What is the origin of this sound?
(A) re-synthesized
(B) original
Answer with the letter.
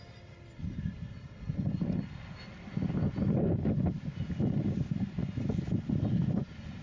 B